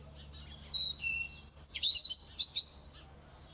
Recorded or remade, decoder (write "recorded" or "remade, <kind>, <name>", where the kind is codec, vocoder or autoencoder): recorded